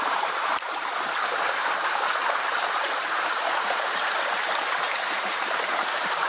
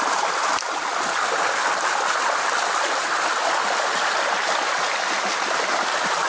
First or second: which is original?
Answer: second